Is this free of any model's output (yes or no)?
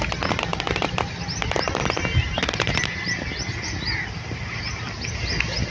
yes